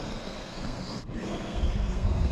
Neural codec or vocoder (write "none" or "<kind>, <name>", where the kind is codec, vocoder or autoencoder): codec, SNAC